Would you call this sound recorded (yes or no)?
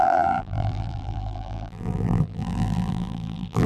no